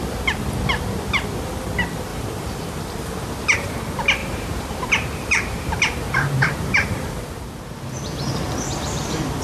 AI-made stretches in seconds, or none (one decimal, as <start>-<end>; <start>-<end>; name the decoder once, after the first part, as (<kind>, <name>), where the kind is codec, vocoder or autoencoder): 2.1-2.8 (vocoder, BigVGAN v2); 4.2-6.9